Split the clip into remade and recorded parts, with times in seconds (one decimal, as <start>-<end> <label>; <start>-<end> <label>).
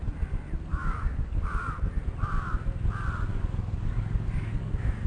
0.0-0.7 recorded; 0.7-1.7 remade; 1.7-3.3 recorded; 3.3-5.1 remade